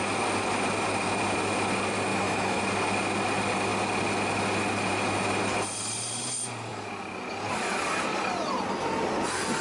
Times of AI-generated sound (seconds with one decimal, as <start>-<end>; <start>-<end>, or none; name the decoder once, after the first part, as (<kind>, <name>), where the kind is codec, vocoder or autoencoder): 2.1-2.6 (autoencoder, DAC-VAE)